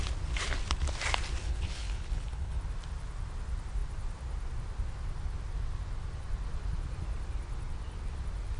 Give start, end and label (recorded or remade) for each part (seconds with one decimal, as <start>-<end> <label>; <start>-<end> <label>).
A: 0.0-1.4 recorded; 1.4-2.6 remade; 2.6-8.6 recorded

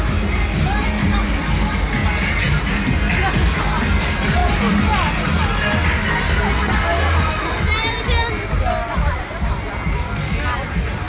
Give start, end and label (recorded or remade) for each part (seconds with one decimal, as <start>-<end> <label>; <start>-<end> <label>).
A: 0.0-11.1 recorded